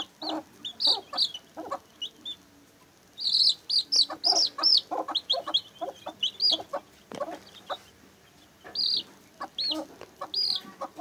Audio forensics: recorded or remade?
recorded